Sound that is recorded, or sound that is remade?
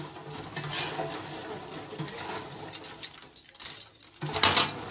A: recorded